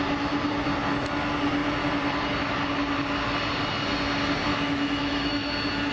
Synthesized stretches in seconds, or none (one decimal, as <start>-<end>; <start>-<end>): 4.5-5.5